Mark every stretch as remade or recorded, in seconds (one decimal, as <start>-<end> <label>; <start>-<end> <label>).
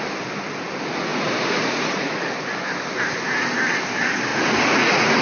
0.0-1.1 recorded; 1.1-2.3 remade; 2.3-4.3 recorded; 4.3-5.2 remade